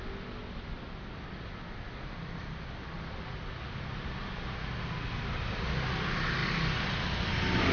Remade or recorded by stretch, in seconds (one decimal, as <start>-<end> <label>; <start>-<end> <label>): 0.0-7.7 recorded